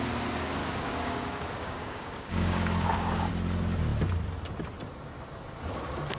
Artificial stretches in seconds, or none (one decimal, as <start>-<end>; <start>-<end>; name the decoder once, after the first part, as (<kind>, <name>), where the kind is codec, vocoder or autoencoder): 0.6-3.3 (codec, DAC)